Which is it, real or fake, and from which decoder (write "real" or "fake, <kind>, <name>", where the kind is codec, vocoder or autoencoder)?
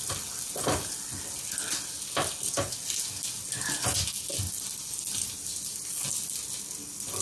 real